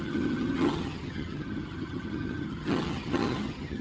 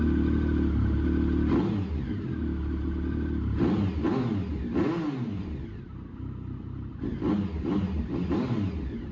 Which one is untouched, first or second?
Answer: second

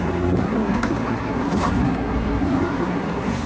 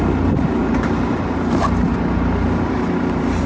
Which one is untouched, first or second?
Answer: second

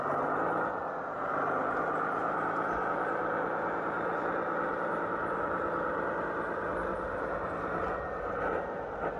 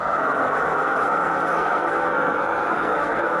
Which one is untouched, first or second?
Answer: first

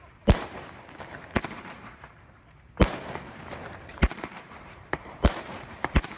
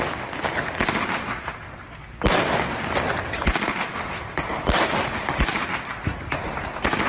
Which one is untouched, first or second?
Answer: second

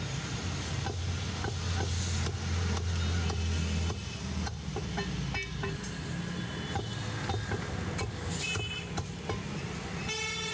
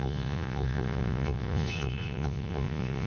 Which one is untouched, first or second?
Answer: first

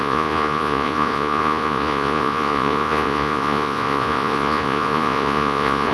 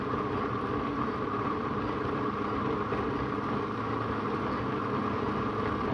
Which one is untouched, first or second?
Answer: second